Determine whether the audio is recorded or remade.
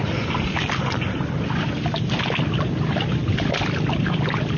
recorded